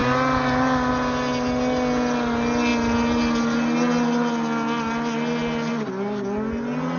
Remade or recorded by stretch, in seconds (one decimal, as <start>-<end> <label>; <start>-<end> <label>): 0.0-7.0 recorded